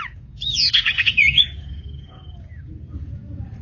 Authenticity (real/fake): fake